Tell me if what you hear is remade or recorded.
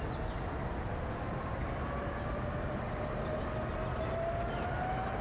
recorded